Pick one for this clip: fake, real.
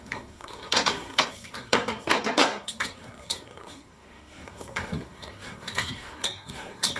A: fake